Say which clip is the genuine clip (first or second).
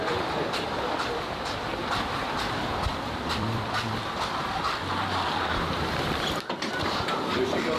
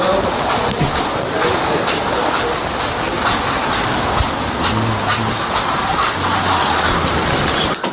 second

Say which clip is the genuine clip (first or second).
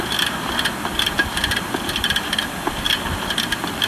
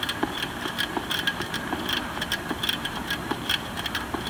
second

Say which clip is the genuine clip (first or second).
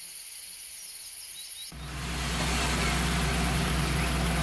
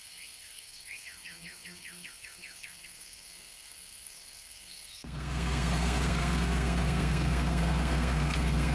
first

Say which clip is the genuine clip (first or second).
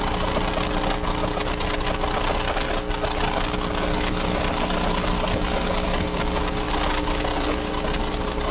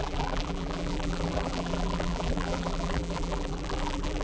first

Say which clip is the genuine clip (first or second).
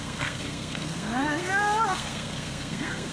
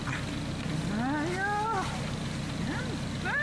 second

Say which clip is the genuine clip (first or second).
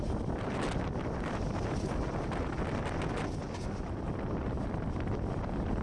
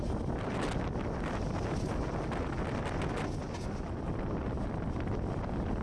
second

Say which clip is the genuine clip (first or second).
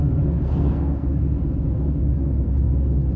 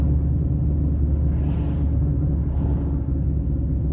second